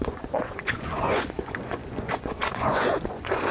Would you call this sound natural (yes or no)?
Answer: no